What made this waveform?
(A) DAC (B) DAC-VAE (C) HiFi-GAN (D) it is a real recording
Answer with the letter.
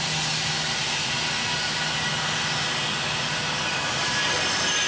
D